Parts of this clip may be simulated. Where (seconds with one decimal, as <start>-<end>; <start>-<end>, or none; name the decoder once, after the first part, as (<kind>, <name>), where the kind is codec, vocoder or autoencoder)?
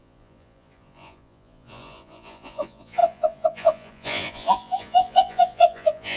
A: 0.0-6.2 (vocoder, Vocos)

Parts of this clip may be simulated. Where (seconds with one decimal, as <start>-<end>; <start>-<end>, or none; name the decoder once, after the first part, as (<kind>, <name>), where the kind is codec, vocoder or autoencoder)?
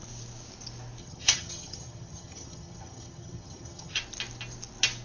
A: 1.0-4.0 (vocoder, HiFi-GAN)